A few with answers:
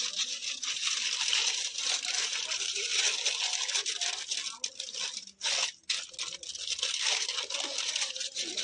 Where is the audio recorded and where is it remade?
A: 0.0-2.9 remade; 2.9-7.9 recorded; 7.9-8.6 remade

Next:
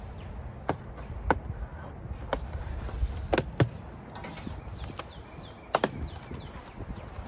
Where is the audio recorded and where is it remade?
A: 0.0-1.7 recorded; 1.7-2.7 remade; 2.7-7.3 recorded